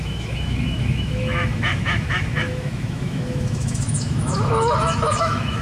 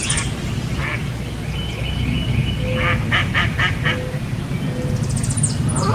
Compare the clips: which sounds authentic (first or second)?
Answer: second